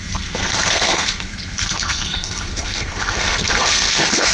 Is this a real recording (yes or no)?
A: no